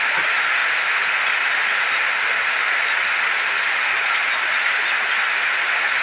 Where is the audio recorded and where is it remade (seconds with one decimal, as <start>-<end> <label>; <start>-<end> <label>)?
0.0-6.0 recorded